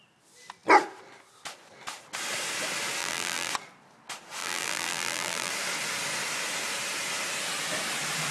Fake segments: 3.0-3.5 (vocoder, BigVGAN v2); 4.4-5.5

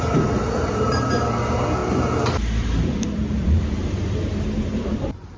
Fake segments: 0.0-5.4 (vocoder, BigVGAN v2)

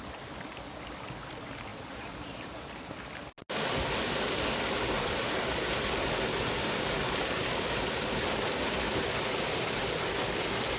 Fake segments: 1.7-2.6 (vocoder, BigVGAN v2); 6.6-8.9

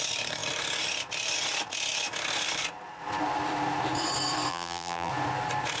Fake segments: 4.5-5.1 (vocoder, BigVGAN v2)

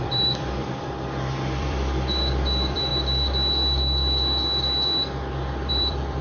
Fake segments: 0.0-2.9 (vocoder, BigVGAN v2); 5.7-6.2

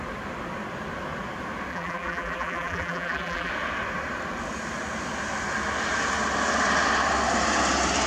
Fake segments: 1.7-3.5 (vocoder, BigVGAN v2)

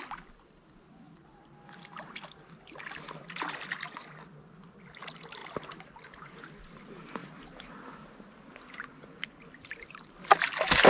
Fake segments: 5.4-6.1 (vocoder, BigVGAN v2)

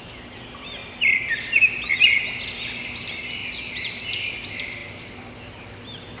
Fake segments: 3.4-4.0 (vocoder, BigVGAN v2); 4.8-6.2